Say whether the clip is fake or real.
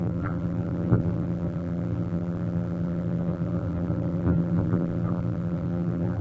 fake